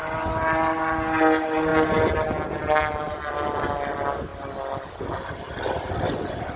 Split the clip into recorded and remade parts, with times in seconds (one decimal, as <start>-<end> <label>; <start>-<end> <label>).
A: 0.0-6.6 recorded